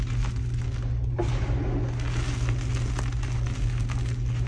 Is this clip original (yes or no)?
yes